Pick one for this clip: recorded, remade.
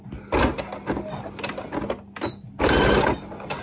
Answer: recorded